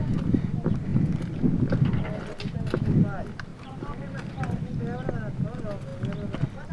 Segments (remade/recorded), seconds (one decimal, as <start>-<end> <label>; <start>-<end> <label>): 0.0-3.5 recorded; 3.5-4.7 remade; 4.7-6.7 recorded